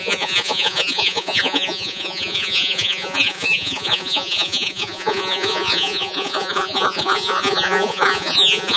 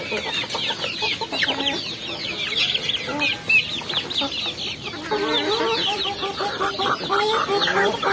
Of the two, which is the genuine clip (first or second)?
second